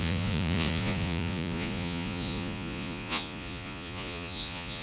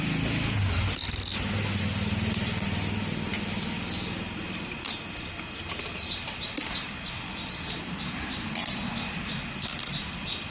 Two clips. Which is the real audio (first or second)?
second